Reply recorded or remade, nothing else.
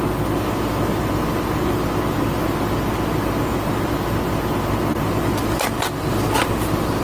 recorded